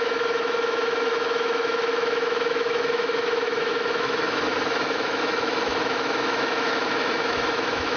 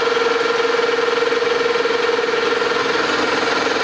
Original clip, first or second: second